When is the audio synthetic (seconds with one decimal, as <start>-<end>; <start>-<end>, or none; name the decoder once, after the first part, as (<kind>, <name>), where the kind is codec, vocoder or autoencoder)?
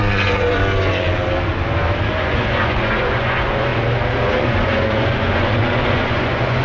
0.0-0.6 (vocoder, Vocos); 2.1-3.7; 4.3-6.6